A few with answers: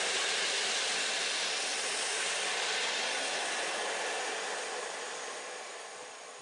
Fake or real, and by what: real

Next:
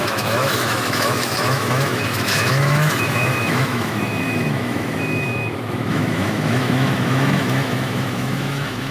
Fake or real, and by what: fake, autoencoder, DAC-VAE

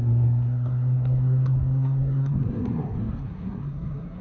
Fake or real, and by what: fake, codec, SNAC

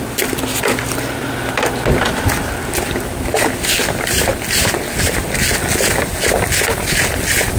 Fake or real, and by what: real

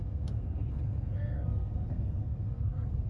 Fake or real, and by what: fake, codec, SNAC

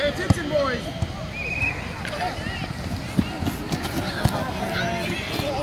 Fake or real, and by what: real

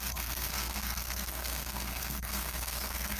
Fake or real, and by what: fake, codec, SNAC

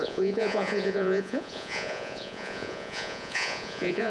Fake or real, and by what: fake, vocoder, Vocos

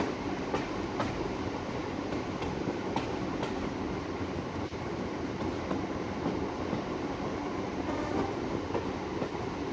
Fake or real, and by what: real